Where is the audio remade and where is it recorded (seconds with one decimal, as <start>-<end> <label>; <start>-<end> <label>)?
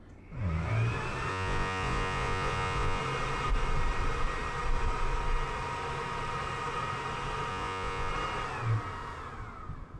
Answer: 0.0-1.3 recorded; 1.3-3.0 remade; 3.0-7.5 recorded; 7.5-8.1 remade; 8.1-10.0 recorded